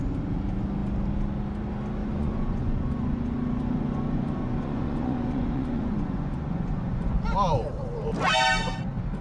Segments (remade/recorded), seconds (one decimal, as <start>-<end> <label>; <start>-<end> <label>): 0.0-2.0 recorded; 2.0-7.1 remade; 7.1-9.2 recorded